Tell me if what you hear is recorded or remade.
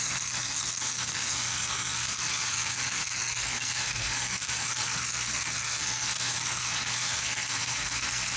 remade